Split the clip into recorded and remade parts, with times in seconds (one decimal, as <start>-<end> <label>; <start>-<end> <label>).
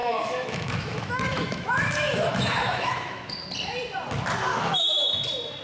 0.0-3.3 remade; 3.3-4.5 recorded; 4.5-5.1 remade; 5.1-5.6 recorded